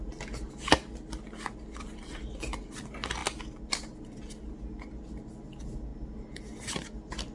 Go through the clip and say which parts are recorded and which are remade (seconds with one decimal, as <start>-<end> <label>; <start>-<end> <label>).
0.0-7.3 recorded